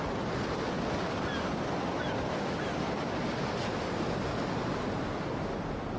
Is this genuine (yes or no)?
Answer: yes